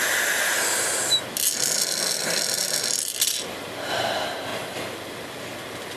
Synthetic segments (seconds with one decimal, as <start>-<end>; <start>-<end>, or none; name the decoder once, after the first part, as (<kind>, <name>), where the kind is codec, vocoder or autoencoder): none